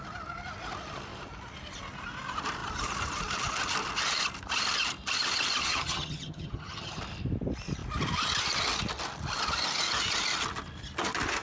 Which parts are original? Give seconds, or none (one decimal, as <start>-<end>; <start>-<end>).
0.0-5.6; 7.0-11.4